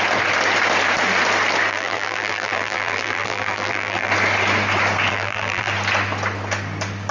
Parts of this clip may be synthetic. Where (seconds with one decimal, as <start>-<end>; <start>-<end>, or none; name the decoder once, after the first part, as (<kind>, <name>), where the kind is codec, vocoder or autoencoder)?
1.7-4.1 (vocoder, BigVGAN v2); 5.1-5.7